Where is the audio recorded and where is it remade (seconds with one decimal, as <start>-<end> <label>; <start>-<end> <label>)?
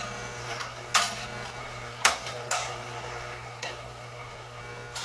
0.0-0.4 recorded; 0.4-0.9 remade; 0.9-1.6 recorded; 1.6-4.6 remade; 4.6-5.0 recorded